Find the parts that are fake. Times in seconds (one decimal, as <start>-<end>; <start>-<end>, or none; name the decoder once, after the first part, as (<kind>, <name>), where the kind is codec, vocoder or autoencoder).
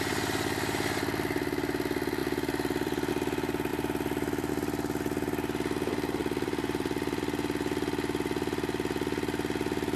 2.2-3.1 (vocoder, BigVGAN v2); 3.7-4.5; 6.2-7.2